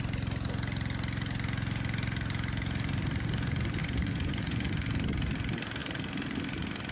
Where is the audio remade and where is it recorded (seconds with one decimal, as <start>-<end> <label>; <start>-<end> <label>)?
0.0-3.8 recorded; 3.8-4.7 remade; 4.7-6.9 recorded